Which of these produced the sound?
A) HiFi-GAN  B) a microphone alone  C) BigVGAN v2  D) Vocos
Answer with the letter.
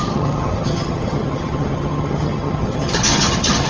A